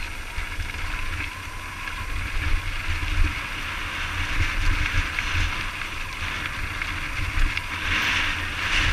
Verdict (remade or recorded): recorded